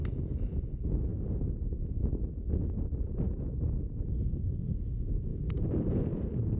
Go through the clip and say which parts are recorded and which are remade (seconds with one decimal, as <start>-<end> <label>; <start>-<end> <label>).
0.0-1.1 recorded; 1.1-1.9 remade; 1.9-6.6 recorded